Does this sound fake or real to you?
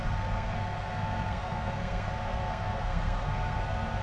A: fake